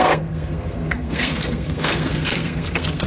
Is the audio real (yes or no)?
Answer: no